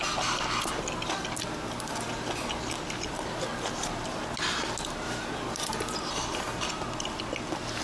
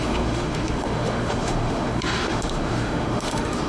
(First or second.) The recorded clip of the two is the first